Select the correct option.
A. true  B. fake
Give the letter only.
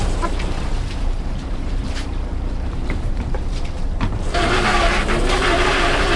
B